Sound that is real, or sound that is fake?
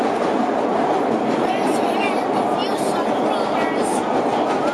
fake